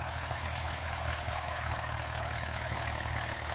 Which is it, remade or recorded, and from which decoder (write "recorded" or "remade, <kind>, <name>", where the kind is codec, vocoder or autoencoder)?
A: remade, codec, HILCodec